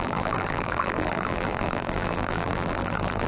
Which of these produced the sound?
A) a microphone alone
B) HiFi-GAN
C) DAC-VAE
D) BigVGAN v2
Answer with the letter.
D